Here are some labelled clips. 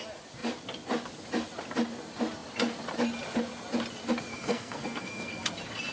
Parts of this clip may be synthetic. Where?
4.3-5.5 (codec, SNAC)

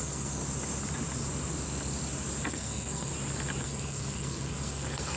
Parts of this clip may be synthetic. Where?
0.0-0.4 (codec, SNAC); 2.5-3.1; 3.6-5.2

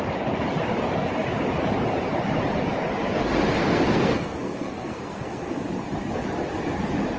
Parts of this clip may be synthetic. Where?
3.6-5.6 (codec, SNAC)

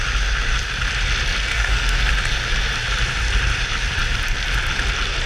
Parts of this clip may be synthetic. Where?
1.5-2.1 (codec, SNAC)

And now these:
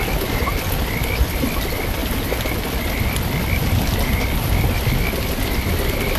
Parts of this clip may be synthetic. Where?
none

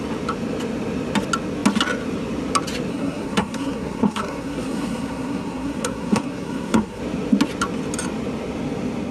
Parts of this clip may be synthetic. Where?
2.9-7.0 (codec, SNAC)

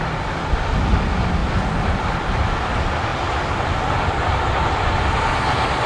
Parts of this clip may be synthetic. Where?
none

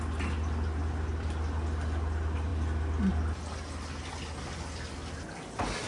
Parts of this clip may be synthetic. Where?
none